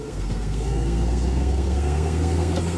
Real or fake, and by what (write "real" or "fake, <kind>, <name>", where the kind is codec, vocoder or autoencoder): fake, codec, SNAC